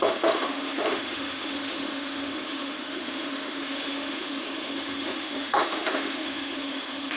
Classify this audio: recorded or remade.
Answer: remade